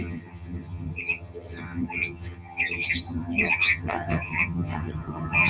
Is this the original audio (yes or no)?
no